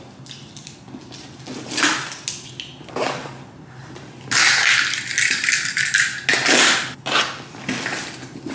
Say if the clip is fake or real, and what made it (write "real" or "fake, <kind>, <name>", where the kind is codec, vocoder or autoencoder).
real